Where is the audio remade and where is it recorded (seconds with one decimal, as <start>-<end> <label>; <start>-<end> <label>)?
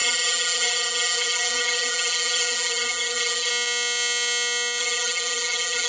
0.0-3.5 remade; 3.5-4.8 recorded; 4.8-5.9 remade